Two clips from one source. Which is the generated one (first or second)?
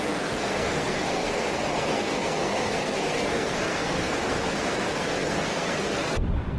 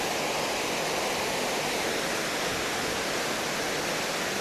first